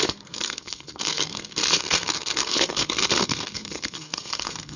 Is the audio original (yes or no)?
no